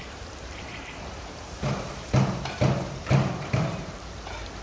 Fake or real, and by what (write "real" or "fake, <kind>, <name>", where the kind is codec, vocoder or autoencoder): fake, vocoder, BigVGAN v2